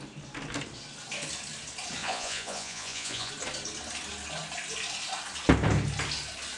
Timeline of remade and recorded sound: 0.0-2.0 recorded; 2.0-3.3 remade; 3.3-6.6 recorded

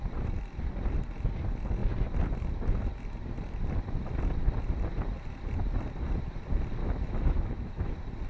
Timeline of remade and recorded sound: 0.0-6.8 recorded; 6.8-7.9 remade; 7.9-8.3 recorded

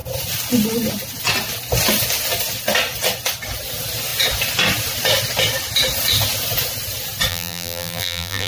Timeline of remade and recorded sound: 0.0-7.3 recorded; 7.3-8.5 remade

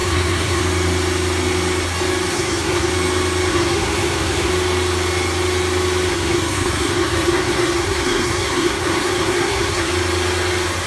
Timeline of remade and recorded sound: 0.0-0.6 remade; 0.6-2.3 recorded; 2.3-2.9 remade; 2.9-3.5 recorded; 3.5-4.5 remade; 4.5-6.1 recorded; 6.1-9.9 remade; 9.9-10.9 recorded

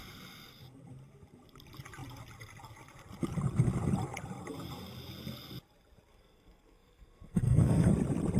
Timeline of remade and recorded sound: 0.0-6.1 recorded; 6.1-7.9 remade; 7.9-8.4 recorded

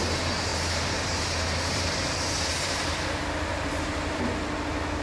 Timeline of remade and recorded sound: 0.0-0.5 recorded; 0.5-2.8 remade; 2.8-3.5 recorded; 3.5-4.3 remade; 4.3-5.0 recorded